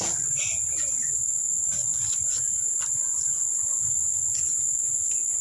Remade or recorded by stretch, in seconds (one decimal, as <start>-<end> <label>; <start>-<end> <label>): 0.0-1.9 recorded; 1.9-2.5 remade; 2.5-3.5 recorded; 3.5-4.5 remade; 4.5-5.4 recorded